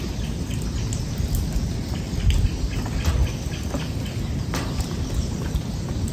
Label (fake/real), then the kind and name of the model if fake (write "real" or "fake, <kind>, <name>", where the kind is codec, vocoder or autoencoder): real